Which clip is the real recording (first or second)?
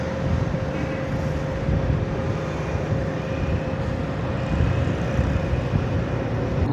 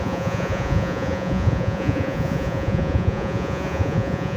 first